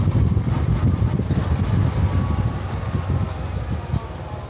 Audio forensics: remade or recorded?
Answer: recorded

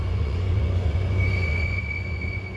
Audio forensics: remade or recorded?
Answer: remade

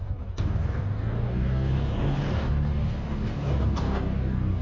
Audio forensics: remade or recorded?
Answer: remade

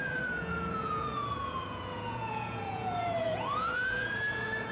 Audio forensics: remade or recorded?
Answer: remade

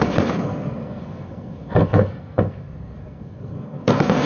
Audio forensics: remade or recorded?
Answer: remade